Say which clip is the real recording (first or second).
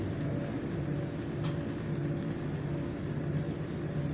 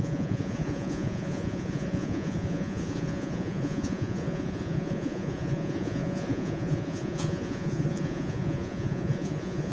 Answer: first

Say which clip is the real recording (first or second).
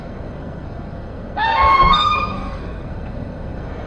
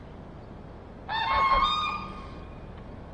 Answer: second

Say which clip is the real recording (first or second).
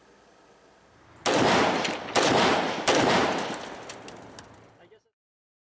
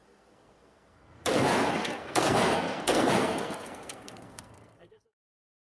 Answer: first